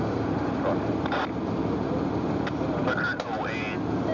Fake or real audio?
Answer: real